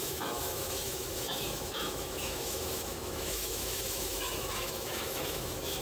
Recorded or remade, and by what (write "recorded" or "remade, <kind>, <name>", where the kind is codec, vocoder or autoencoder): remade, autoencoder, DAC-VAE